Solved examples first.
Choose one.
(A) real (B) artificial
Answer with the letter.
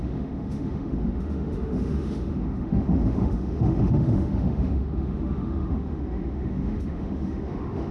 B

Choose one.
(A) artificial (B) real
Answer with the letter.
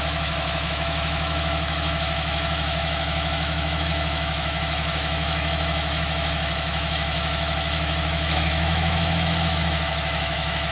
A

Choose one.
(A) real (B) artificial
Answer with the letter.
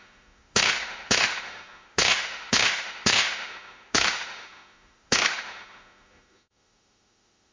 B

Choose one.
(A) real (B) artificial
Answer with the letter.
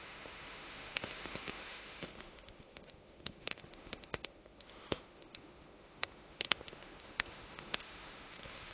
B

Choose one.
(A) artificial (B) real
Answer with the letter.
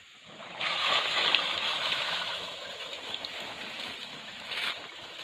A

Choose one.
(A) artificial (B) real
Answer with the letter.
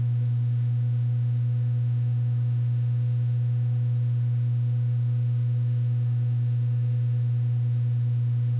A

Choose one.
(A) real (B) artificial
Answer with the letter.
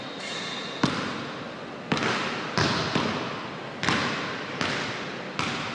A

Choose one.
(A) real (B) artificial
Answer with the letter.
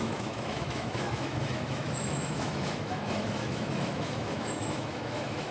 B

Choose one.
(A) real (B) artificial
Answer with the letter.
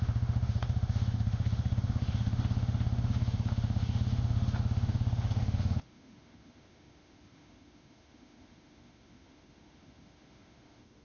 B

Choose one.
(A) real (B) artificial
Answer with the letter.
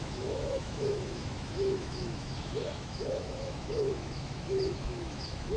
B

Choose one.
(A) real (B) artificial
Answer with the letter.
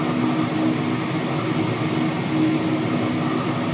A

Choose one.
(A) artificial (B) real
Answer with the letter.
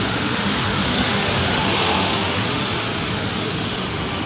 A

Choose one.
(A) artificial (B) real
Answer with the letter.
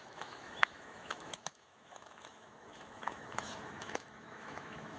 A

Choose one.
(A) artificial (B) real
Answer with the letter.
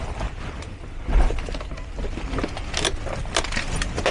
B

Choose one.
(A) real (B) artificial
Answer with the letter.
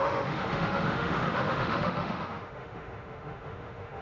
B